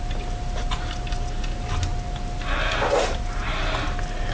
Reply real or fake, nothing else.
real